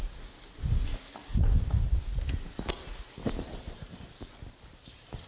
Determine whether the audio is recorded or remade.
recorded